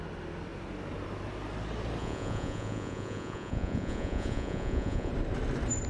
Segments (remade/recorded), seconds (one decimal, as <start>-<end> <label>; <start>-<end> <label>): 0.0-2.0 recorded; 2.0-5.1 remade; 5.1-5.9 recorded